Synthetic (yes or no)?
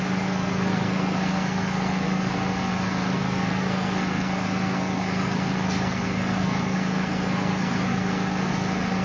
yes